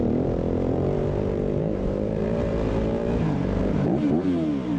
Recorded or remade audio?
remade